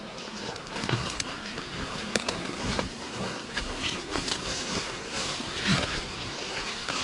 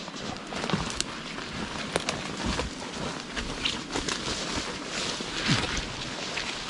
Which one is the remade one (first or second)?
first